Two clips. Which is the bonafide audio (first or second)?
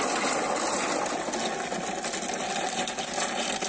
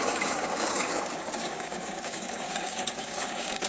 first